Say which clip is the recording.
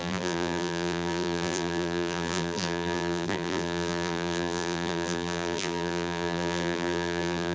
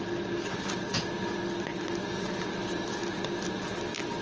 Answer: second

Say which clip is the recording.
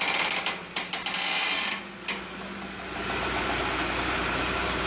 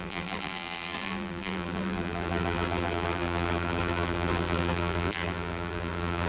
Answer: first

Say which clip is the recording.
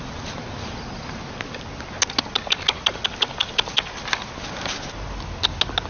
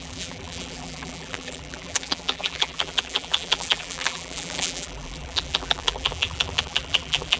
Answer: first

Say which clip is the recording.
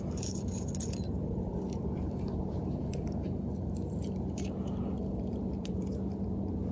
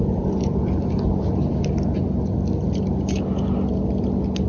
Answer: second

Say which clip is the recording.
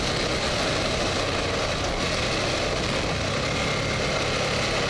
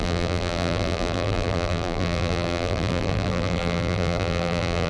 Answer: first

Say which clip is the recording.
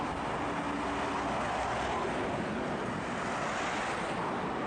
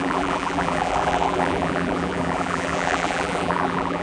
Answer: first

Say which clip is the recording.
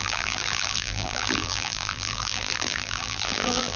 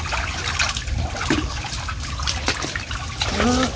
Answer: second